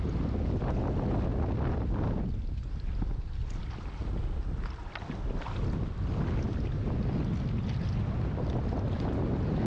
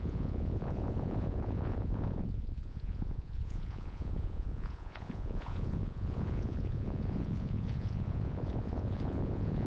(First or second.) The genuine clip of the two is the first